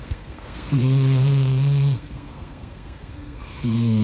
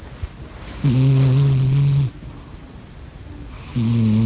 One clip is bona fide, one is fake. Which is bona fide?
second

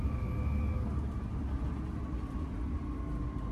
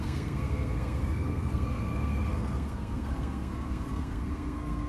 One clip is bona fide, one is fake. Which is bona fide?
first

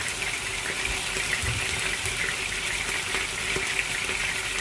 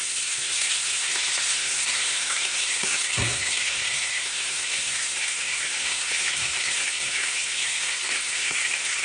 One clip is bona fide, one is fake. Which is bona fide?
first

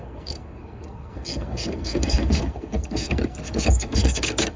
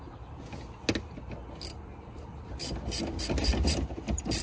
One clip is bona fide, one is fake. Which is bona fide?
second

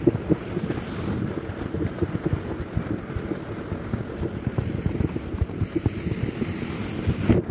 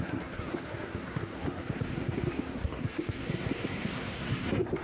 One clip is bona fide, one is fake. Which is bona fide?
first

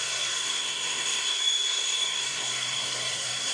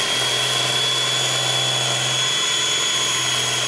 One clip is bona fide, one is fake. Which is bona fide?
second